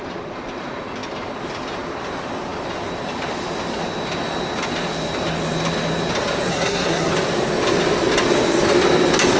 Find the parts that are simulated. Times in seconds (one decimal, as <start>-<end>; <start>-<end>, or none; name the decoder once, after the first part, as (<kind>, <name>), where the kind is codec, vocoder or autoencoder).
6.5-7.1 (codec, SNAC)